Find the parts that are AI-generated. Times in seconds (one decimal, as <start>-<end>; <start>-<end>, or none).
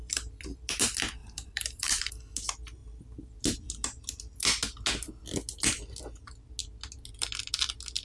1.2-2.1